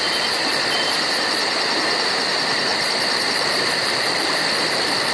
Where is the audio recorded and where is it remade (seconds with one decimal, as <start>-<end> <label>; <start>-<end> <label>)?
0.0-2.7 recorded; 2.7-5.1 remade